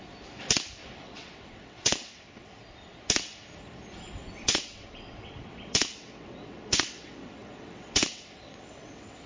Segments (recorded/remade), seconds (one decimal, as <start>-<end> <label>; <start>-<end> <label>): 0.0-0.8 recorded; 0.8-2.6 remade; 2.6-4.2 recorded; 4.2-9.3 remade